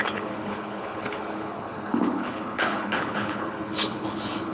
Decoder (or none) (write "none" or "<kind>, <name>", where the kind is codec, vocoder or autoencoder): codec, HILCodec